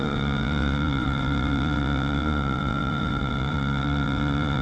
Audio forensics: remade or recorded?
remade